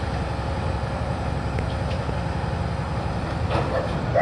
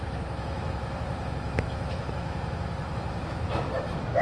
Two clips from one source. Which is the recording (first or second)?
first